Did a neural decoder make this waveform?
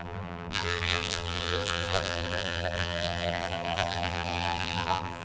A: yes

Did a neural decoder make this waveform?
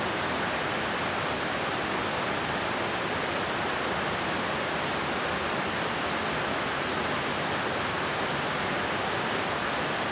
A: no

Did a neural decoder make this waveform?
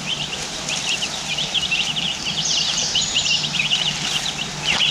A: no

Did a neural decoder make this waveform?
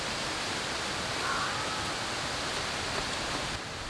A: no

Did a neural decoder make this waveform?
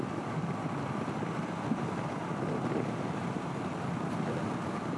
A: no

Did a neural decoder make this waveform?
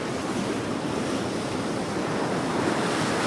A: no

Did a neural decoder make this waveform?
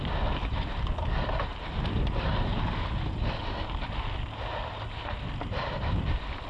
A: no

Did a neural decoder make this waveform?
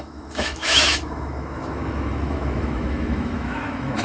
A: yes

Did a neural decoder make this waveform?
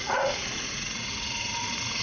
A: yes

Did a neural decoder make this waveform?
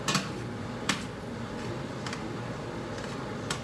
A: no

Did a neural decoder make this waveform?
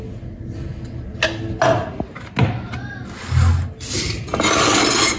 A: no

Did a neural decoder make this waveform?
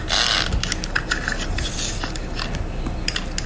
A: no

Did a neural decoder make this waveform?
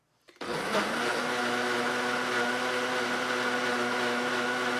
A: no